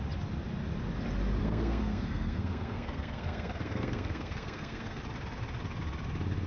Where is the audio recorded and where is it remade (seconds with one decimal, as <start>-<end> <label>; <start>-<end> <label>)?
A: 0.0-1.4 recorded; 1.4-5.0 remade; 5.0-6.5 recorded